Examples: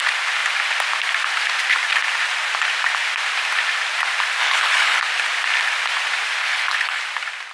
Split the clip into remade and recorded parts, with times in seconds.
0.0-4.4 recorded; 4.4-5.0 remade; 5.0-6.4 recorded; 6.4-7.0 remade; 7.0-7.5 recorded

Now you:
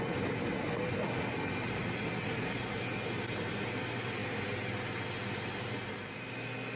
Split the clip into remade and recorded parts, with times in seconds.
0.0-6.8 recorded

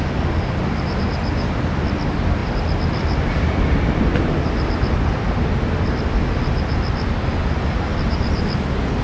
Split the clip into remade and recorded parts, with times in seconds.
0.0-9.0 recorded

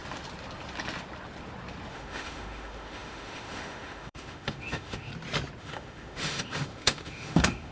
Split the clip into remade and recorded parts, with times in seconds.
0.0-1.9 recorded; 1.9-5.1 remade; 5.1-5.6 recorded; 5.6-7.7 remade

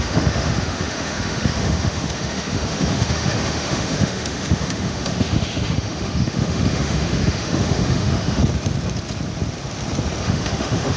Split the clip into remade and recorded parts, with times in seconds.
0.0-8.4 remade; 8.4-10.2 recorded; 10.2-11.0 remade